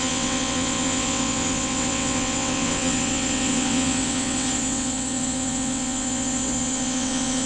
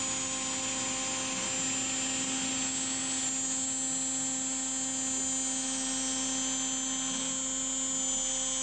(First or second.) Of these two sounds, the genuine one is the second